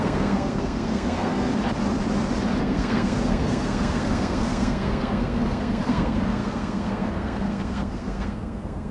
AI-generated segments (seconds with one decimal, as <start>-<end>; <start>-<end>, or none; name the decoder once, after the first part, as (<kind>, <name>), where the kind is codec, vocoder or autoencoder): 0.0-1.5 (codec, SNAC); 2.6-8.9